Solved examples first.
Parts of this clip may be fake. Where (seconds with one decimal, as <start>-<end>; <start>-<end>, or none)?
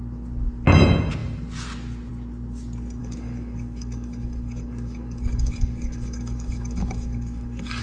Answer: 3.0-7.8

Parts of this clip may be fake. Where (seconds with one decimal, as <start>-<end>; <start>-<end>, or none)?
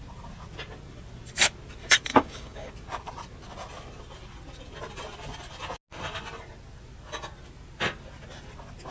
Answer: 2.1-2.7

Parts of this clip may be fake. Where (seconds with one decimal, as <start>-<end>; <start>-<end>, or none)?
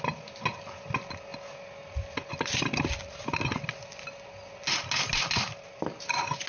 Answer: none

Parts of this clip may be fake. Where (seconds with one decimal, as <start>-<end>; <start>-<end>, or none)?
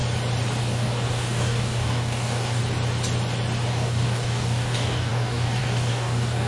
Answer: 0.6-2.6; 3.7-6.5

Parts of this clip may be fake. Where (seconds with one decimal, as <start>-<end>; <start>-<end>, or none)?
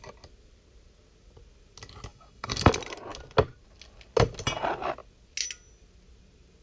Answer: 2.1-2.7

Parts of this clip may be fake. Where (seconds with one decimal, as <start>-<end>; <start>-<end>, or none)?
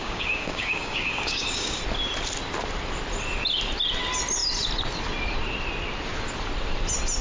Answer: 0.0-1.8